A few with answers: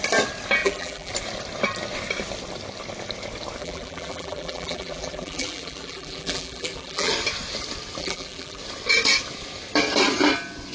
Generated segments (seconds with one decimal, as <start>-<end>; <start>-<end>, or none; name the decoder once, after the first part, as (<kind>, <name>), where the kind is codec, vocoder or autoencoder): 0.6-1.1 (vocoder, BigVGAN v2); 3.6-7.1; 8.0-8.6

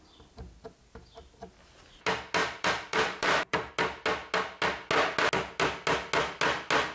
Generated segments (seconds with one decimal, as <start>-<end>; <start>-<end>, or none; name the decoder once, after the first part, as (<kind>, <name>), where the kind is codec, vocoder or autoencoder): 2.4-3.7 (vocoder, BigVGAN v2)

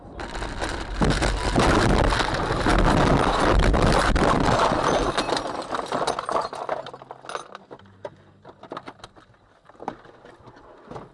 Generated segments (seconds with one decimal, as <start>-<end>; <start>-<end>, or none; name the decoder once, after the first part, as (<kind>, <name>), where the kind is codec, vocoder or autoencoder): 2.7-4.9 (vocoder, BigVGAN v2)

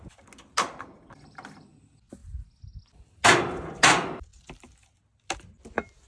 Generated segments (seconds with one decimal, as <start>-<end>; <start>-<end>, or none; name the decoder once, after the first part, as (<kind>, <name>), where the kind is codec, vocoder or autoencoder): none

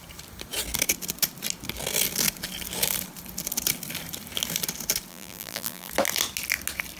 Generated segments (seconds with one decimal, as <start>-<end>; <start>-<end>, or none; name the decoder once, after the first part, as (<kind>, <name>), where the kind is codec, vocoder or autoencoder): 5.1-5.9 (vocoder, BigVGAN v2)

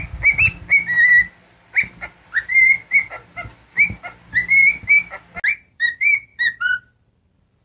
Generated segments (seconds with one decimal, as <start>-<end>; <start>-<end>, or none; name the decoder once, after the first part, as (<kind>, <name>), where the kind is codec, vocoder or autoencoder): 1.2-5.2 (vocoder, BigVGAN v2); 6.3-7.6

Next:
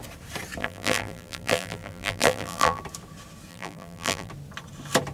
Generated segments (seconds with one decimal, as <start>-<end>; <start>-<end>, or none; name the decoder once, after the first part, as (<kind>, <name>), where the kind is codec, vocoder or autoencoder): 0.6-2.8 (vocoder, BigVGAN v2); 3.5-4.3